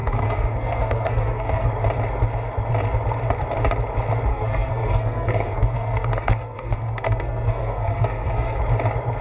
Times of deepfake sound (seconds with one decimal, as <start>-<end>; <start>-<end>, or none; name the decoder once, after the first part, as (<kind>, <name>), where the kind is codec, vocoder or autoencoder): 0.0-1.7 (codec, SNAC); 4.3-8.6